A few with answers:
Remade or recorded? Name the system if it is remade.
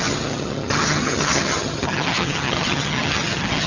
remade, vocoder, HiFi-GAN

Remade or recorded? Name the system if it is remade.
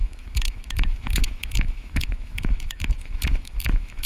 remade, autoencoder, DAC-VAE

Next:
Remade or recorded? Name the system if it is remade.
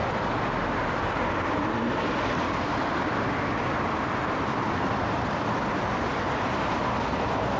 remade, vocoder, BigVGAN v2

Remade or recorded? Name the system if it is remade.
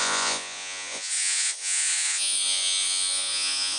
remade, vocoder, Vocos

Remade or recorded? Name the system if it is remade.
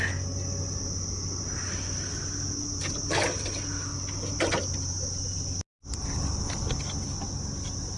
recorded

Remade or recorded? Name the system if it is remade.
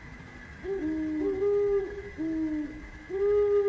recorded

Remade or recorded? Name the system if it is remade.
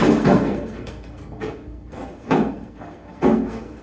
remade, codec, SNAC